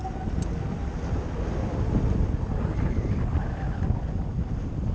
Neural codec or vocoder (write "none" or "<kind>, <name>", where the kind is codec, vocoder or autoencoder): none